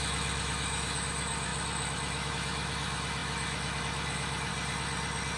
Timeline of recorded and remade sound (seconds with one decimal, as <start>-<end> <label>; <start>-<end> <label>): 0.0-4.5 remade; 4.5-5.4 recorded